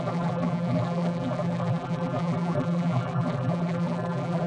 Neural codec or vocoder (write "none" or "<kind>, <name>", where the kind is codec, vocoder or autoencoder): vocoder, BigVGAN v2